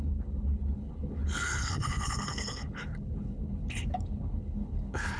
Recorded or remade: remade